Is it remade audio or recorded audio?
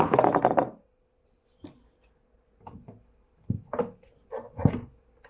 recorded